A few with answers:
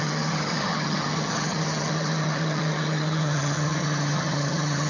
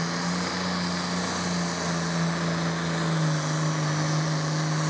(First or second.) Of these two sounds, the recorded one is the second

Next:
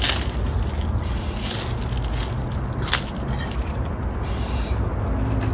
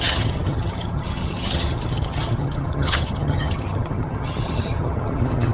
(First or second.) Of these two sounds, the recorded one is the first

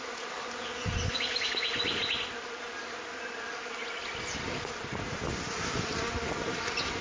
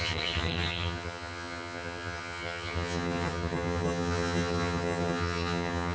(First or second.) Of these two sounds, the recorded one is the first